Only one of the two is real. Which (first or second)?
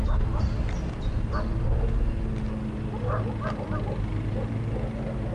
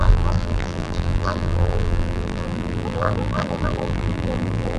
first